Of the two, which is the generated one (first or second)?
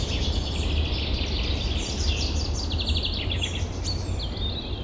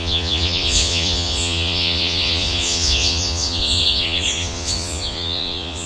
second